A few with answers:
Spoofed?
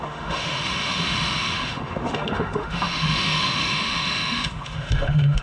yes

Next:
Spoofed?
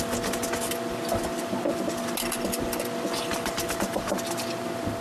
no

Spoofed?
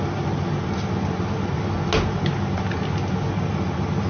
no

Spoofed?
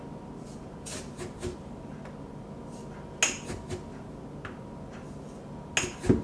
no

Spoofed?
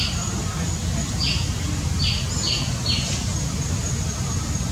no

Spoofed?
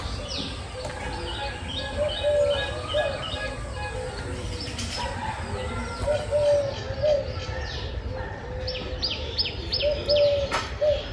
no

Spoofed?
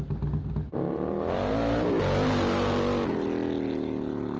no